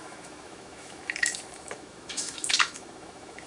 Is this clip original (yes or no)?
no